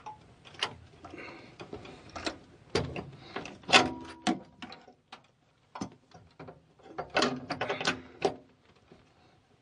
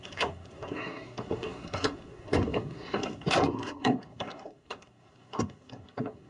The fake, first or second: second